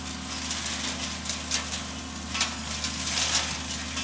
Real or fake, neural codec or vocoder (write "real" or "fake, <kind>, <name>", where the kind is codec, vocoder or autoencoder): real